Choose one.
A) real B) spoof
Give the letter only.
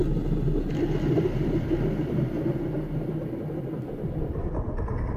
A